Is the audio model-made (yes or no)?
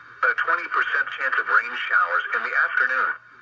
no